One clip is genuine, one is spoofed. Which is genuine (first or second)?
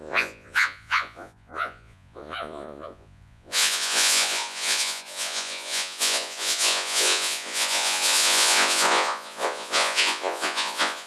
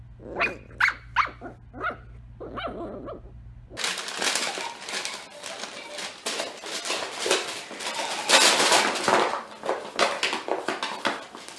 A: second